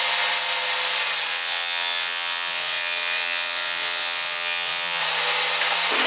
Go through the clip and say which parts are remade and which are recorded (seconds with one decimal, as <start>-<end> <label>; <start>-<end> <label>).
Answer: 0.0-1.3 recorded; 1.3-5.0 remade; 5.0-6.1 recorded